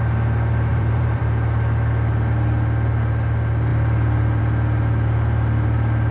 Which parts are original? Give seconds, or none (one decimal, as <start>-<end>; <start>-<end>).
0.0-0.7; 1.2-6.1